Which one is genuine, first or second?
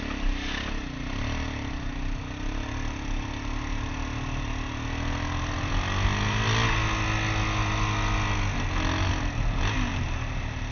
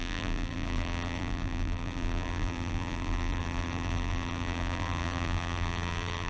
first